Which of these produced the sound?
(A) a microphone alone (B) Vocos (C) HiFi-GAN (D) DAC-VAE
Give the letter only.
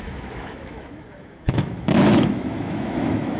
D